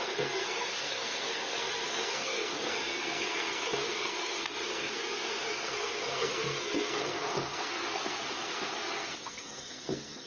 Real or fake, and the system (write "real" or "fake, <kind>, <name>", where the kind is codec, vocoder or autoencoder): fake, codec, SNAC